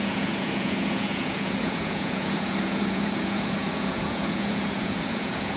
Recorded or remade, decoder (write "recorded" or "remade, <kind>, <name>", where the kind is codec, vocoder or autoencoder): remade, vocoder, Vocos